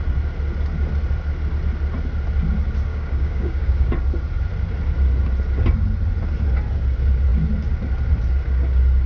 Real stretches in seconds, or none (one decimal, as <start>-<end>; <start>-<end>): 0.0-2.9; 3.9-9.1